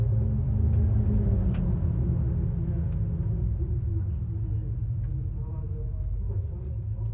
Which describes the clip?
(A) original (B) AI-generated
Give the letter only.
A